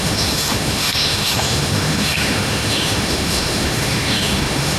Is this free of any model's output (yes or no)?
no